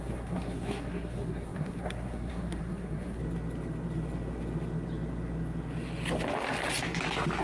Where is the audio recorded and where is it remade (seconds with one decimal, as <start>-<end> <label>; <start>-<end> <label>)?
0.0-3.2 remade; 3.2-7.4 recorded